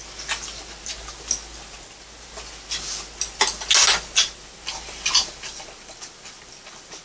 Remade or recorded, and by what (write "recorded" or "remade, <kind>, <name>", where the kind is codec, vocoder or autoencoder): recorded